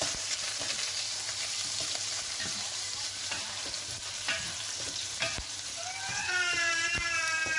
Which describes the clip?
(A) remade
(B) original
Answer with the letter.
A